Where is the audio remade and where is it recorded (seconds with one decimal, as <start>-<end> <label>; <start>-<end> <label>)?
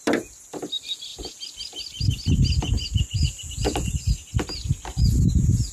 0.0-5.7 recorded